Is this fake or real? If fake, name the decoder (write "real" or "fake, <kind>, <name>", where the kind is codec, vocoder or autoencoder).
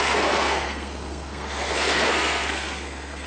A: fake, codec, SNAC